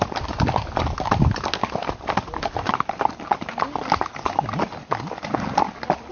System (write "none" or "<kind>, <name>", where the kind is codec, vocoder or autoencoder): none